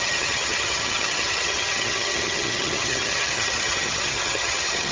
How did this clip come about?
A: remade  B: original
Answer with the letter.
A